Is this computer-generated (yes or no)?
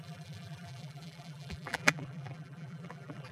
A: yes